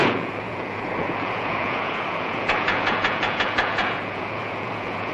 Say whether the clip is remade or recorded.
remade